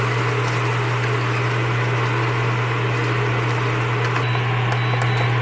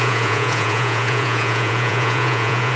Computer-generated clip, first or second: second